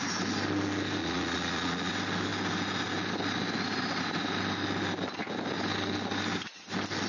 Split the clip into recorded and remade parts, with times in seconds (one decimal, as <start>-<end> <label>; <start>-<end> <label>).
0.0-1.0 recorded; 1.0-1.9 remade; 1.9-7.1 recorded